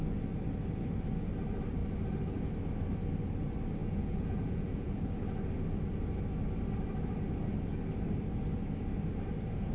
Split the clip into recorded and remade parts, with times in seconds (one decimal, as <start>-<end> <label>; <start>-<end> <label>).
0.0-3.8 recorded; 3.8-5.1 remade; 5.1-9.7 recorded